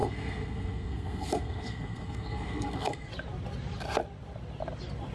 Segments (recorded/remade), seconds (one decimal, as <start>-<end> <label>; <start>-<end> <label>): 0.0-3.1 remade; 3.1-5.1 recorded